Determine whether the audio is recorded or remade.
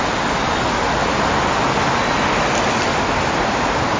recorded